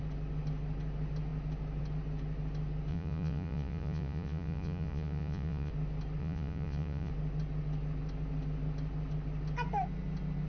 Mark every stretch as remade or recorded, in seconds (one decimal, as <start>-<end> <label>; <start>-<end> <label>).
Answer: 0.0-2.9 recorded; 2.9-5.7 remade; 5.7-6.2 recorded; 6.2-7.1 remade; 7.1-10.5 recorded